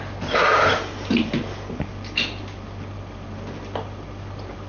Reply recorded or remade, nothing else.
recorded